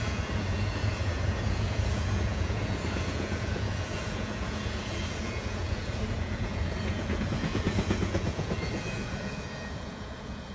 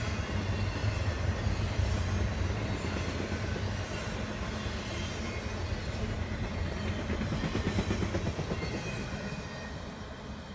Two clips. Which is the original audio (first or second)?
second